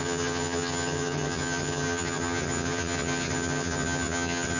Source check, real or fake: fake